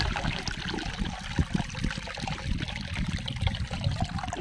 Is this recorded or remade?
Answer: recorded